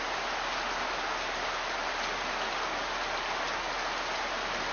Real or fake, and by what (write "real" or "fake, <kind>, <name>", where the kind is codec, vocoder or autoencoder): real